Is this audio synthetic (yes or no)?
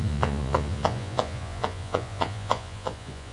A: yes